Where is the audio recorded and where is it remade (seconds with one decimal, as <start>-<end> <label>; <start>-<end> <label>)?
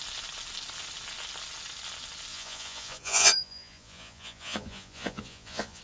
0.0-2.3 recorded; 2.3-5.8 remade